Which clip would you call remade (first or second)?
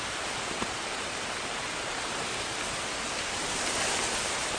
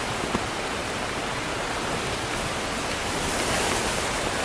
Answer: first